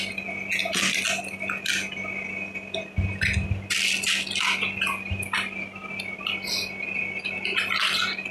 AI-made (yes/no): no